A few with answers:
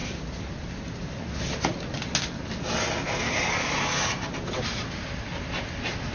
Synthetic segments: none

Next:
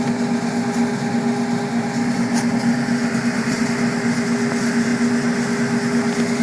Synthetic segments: 3.0-3.6 (vocoder, BigVGAN v2)

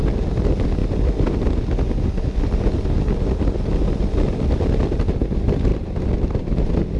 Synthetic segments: none